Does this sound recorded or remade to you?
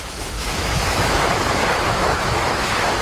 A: remade